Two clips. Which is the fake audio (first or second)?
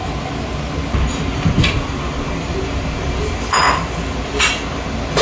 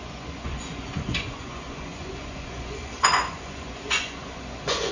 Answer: second